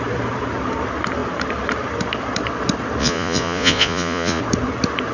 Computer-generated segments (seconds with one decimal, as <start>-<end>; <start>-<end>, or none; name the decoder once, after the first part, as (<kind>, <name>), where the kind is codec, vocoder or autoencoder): 3.0-4.4 (vocoder, Vocos)